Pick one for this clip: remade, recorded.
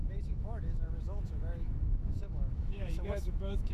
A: remade